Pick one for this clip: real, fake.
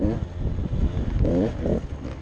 real